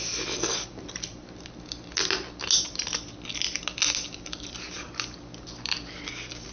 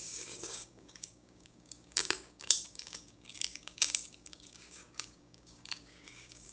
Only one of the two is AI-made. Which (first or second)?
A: second